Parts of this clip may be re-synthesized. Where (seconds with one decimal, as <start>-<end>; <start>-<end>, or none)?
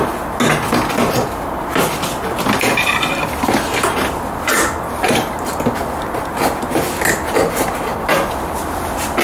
none